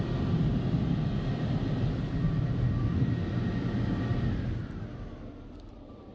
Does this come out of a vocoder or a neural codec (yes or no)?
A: no